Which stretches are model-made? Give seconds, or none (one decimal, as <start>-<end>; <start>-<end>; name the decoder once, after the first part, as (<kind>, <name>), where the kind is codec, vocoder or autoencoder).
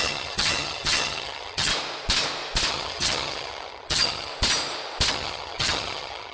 0.0-1.7 (vocoder, HiFi-GAN); 2.7-4.3; 5.1-6.3